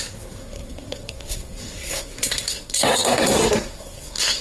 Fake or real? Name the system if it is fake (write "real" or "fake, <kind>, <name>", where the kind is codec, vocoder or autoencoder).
fake, codec, SNAC